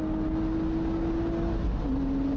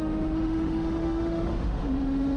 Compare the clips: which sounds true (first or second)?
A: first